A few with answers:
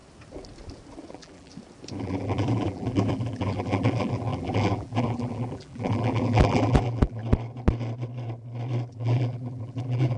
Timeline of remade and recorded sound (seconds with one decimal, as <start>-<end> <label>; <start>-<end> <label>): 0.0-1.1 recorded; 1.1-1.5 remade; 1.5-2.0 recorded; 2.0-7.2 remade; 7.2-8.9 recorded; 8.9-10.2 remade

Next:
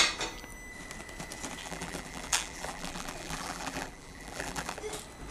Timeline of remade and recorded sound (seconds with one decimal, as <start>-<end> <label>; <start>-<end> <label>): 0.0-1.6 recorded; 1.6-4.8 remade; 4.8-5.3 recorded

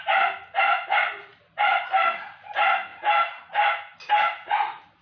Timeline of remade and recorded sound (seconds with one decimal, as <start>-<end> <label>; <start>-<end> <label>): 0.0-1.3 recorded; 1.3-1.8 remade; 1.8-5.0 recorded

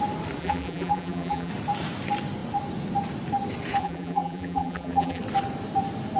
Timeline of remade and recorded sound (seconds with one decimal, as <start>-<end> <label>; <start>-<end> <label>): 0.0-0.4 recorded; 0.4-1.5 remade; 1.5-3.8 recorded; 3.8-5.2 remade; 5.2-6.2 recorded

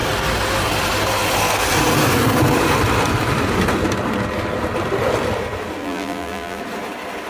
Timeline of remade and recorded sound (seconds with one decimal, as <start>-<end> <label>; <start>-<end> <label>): 0.0-5.8 recorded; 5.8-6.6 remade; 6.6-7.3 recorded

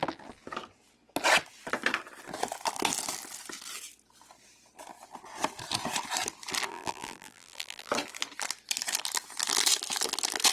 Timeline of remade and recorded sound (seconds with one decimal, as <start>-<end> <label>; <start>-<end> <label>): 0.0-6.7 recorded; 6.7-7.9 remade; 7.9-10.5 recorded